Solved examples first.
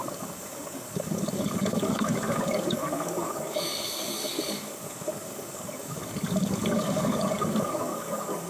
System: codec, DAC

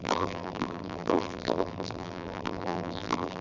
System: vocoder, BigVGAN v2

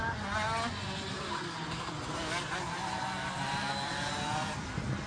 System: none